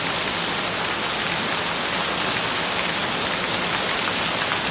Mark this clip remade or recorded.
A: recorded